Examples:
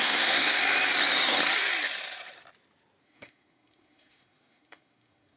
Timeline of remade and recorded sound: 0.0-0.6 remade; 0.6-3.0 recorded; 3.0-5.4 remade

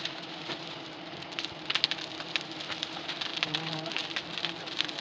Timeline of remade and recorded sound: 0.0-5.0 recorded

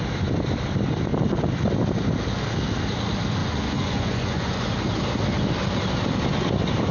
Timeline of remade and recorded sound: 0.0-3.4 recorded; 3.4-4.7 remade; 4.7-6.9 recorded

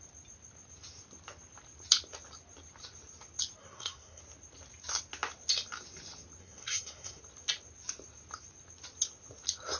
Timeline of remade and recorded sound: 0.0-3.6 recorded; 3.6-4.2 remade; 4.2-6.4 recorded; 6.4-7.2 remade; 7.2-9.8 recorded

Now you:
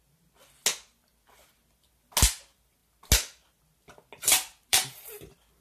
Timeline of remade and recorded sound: 0.0-4.7 recorded; 4.7-5.6 remade

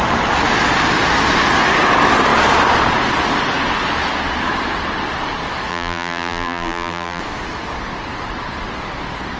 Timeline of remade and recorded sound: 0.0-5.7 recorded; 5.7-7.2 remade; 7.2-9.4 recorded

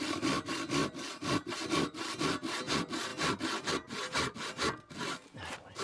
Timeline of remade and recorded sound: 0.0-5.8 recorded

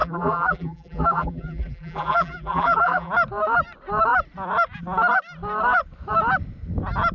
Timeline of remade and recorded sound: 0.0-3.1 remade; 3.1-7.1 recorded